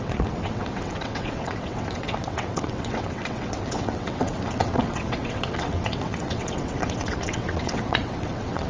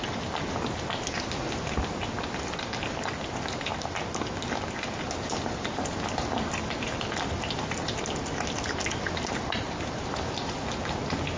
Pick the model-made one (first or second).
first